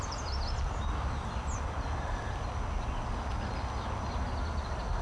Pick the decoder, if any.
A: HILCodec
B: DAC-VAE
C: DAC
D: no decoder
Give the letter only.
D